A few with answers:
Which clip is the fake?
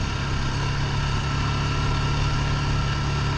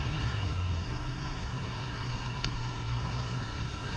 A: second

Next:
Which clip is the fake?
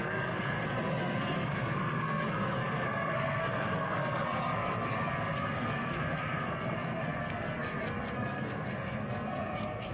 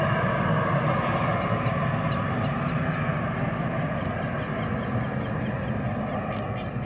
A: first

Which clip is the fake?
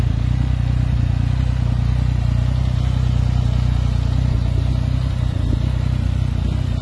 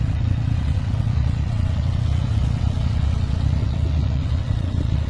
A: second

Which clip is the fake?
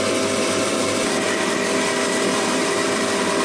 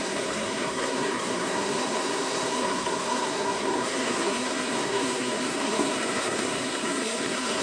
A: second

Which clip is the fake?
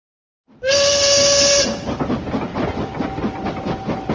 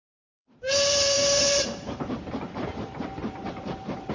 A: second